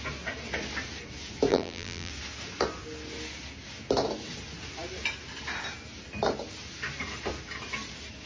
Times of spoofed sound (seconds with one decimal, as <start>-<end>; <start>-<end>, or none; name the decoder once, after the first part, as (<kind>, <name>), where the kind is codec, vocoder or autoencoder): 1.5-2.1 (vocoder, BigVGAN v2)